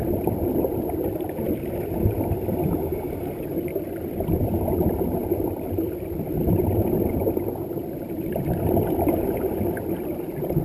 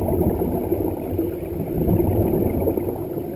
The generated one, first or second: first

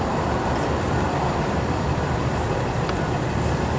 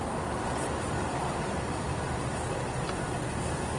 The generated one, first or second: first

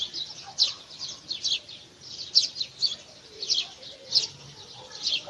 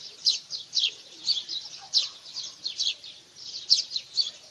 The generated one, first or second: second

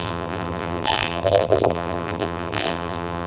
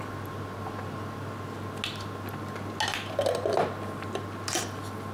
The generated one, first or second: first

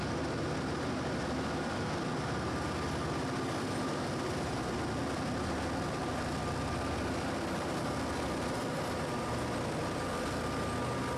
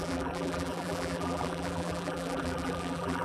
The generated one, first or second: second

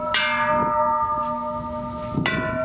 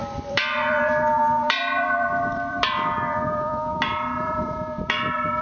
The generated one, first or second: second